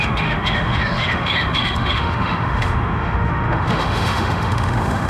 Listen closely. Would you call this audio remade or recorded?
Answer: remade